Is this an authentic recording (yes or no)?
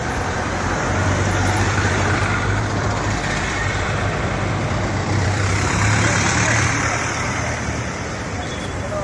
no